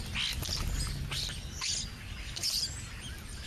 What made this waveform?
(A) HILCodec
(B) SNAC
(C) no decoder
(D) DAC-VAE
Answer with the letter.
C